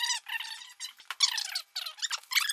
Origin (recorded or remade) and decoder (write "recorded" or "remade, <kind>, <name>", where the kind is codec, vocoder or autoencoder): recorded